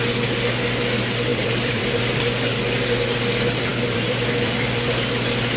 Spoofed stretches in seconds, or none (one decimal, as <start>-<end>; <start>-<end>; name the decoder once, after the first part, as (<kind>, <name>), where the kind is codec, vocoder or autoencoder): 1.3-2.1 (vocoder, BigVGAN v2); 3.7-4.9

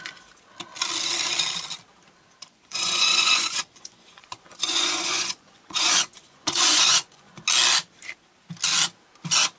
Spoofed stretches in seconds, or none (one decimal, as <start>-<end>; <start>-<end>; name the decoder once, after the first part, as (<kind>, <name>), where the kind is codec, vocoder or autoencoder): 2.4-7.4 (vocoder, Vocos)

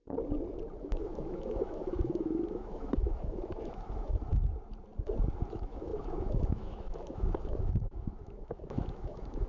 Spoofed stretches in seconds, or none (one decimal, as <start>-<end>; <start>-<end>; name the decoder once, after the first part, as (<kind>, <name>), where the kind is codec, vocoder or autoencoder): 0.8-4.3 (autoencoder, DAC-VAE); 5.5-9.5

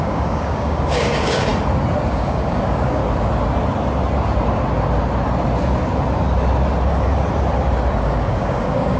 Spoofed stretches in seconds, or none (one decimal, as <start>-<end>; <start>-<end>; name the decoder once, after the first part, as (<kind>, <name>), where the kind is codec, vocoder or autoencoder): 0.0-1.5 (codec, DAC); 2.1-3.0; 8.0-9.0

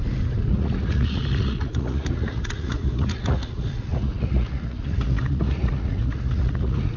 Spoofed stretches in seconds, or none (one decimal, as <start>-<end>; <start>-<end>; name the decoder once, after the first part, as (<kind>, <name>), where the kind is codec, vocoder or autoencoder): 0.5-7.0 (vocoder, Vocos)

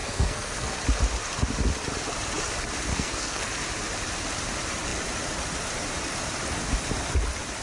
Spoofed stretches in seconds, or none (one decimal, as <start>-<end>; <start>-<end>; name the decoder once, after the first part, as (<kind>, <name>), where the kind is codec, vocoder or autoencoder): 0.0-0.8 (codec, SNAC); 2.9-3.5

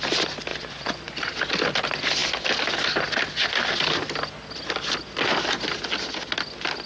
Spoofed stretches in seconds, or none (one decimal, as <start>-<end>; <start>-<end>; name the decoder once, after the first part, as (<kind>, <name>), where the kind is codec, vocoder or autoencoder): 0.5-1.3 (vocoder, Vocos)

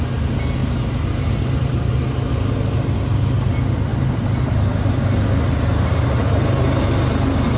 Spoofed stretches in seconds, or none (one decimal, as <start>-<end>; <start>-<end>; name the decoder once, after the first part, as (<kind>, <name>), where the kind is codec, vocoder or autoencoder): 0.6-1.9 (vocoder, BigVGAN v2); 3.9-4.4; 5.7-6.2